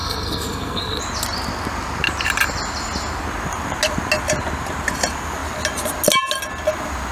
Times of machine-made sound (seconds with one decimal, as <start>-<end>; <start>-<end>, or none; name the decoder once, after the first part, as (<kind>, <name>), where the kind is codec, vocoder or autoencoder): 0.0-1.0 (codec, SNAC)

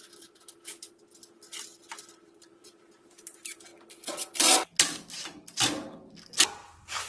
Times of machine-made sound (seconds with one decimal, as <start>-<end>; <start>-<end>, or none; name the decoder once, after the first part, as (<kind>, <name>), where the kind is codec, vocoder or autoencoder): 0.0-1.2 (vocoder, BigVGAN v2); 2.1-3.7; 6.5-7.1

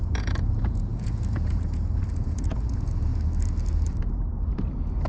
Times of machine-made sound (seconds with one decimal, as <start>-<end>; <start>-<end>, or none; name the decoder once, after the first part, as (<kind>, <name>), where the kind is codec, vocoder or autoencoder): 0.0-3.1 (vocoder, Vocos)

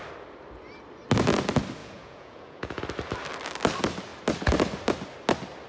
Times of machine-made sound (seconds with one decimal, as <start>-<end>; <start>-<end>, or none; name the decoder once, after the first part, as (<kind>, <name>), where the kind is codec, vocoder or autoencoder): 1.8-2.8 (vocoder, Vocos)

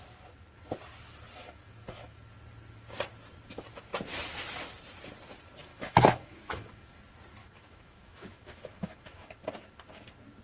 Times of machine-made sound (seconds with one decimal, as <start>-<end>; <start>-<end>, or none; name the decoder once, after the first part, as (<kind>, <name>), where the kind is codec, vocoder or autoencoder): 1.4-2.2 (autoencoder, DAC-VAE); 5.7-7.0; 7.4-9.3

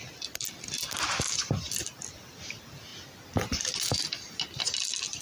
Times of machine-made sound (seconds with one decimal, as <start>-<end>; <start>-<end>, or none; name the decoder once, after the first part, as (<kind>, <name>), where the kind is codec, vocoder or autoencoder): none